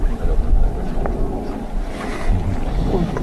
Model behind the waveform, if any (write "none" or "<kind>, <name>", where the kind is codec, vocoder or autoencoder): none